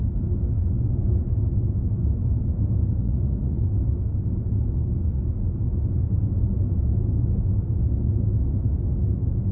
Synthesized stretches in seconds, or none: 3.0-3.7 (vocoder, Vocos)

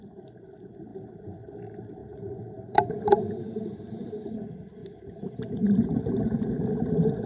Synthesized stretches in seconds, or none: 2.0-4.2 (vocoder, BigVGAN v2); 4.8-6.6

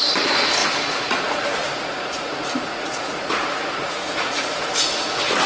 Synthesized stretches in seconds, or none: 0.6-1.2 (vocoder, Vocos); 1.6-4.9

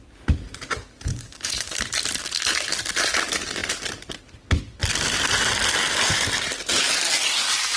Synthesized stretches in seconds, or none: 1.1-1.8 (codec, DAC)